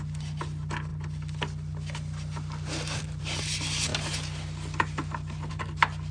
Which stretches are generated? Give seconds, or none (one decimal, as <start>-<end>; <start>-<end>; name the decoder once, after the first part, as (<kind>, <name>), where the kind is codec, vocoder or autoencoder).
none